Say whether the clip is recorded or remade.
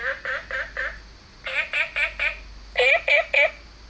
recorded